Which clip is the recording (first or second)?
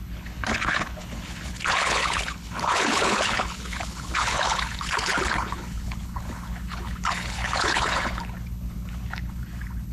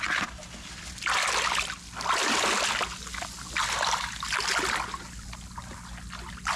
second